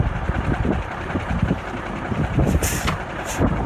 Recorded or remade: remade